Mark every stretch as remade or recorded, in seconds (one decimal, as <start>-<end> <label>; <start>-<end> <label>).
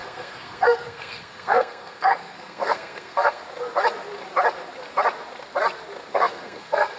0.0-3.4 remade; 3.4-6.1 recorded; 6.1-7.0 remade